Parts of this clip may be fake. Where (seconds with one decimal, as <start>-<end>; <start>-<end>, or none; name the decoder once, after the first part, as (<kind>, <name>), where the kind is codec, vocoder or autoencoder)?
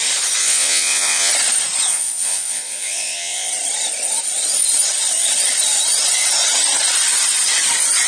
0.4-1.3 (vocoder, Vocos); 1.9-3.5